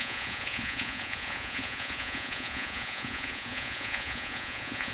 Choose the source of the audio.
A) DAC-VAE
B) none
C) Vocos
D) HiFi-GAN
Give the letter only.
C